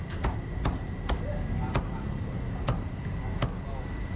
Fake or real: real